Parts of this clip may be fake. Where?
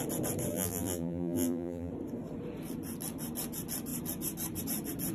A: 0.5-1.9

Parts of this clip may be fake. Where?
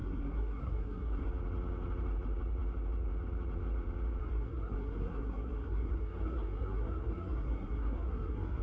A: 0.0-1.3; 4.2-8.6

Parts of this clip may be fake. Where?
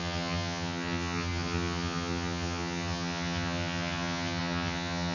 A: 0.0-5.1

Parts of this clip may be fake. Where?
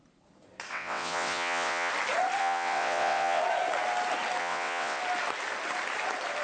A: 0.7-1.9; 2.4-3.4; 4.4-5.0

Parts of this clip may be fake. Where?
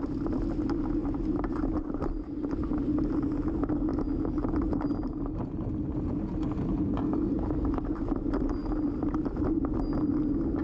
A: 1.0-2.6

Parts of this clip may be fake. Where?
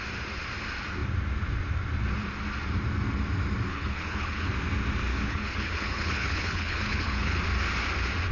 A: 3.7-4.5; 5.1-7.4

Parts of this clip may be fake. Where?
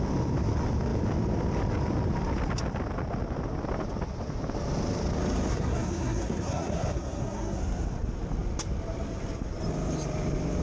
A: 5.5-7.6